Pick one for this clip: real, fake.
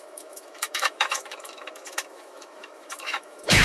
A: fake